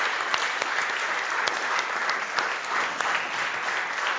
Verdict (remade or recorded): recorded